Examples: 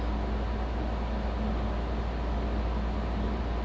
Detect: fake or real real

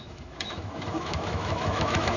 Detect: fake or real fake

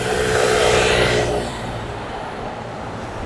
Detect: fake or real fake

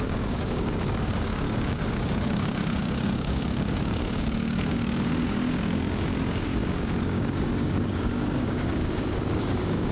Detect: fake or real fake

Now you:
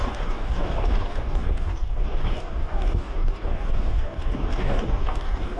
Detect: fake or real fake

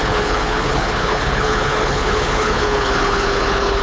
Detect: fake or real fake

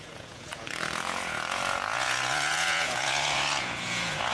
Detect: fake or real fake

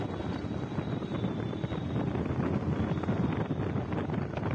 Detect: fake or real real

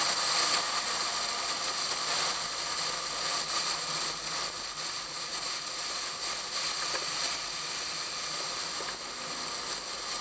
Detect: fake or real real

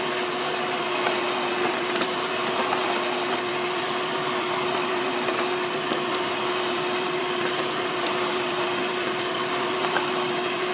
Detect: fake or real fake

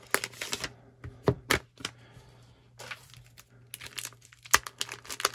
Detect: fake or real real